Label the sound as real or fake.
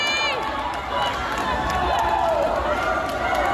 real